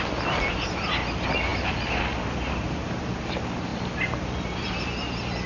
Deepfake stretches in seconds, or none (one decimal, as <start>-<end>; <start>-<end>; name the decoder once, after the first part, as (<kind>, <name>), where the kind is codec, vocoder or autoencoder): none